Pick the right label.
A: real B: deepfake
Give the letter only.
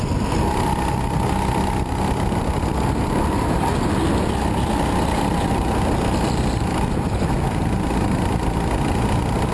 A